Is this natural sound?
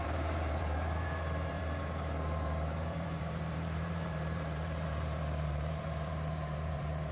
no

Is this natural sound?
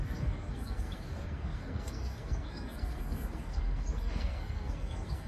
no